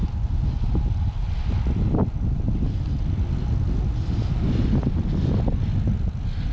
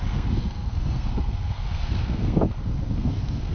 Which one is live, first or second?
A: first